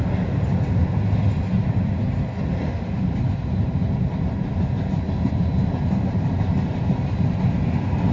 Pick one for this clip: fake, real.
real